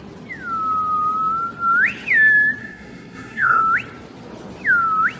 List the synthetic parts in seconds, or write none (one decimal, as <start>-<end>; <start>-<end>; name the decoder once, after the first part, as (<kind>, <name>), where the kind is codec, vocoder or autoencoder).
2.6-3.6 (codec, SNAC)